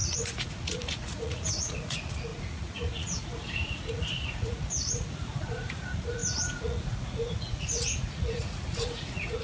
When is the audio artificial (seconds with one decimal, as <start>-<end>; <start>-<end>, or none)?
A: 0.0-9.4